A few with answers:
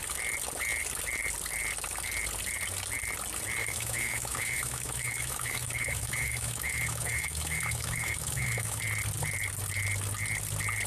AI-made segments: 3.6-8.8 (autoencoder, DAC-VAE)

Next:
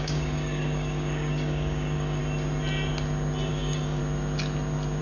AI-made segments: 0.0-2.2 (codec, DAC); 3.5-4.0

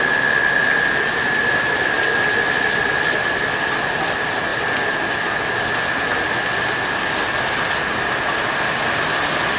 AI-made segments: 0.6-3.8 (vocoder, BigVGAN v2)

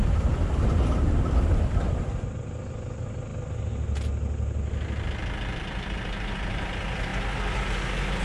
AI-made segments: 0.0-3.3 (vocoder, BigVGAN v2); 5.6-7.1

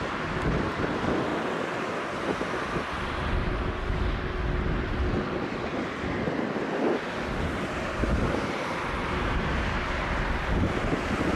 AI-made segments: none

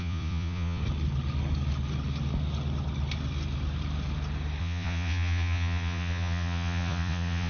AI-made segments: 0.0-0.8 (vocoder, Vocos); 4.6-7.5